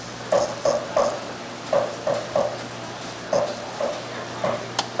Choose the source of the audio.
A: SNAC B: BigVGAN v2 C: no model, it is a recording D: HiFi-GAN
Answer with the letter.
C